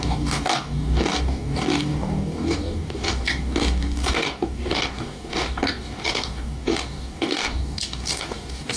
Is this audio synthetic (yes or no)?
yes